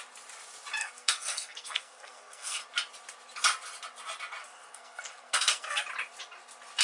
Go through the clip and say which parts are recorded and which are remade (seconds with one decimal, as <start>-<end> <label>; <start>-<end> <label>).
0.0-0.8 recorded; 0.8-2.6 remade; 2.6-4.4 recorded; 4.4-5.8 remade; 5.8-6.8 recorded